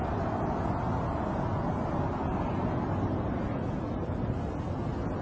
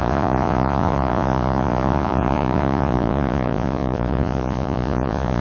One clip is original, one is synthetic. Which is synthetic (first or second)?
second